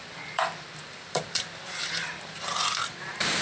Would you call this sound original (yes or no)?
no